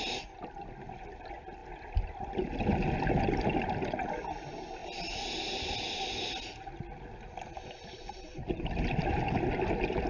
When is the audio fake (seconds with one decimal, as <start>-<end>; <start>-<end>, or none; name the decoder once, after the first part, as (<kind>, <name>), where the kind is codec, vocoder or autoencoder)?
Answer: none